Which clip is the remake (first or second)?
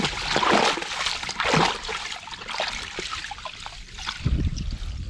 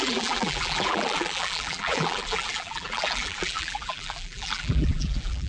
second